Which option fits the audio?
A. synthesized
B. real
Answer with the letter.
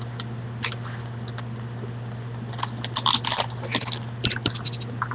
B